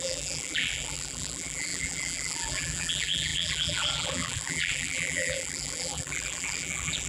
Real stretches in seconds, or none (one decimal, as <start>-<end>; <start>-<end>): none